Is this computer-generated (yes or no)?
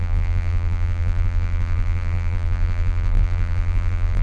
yes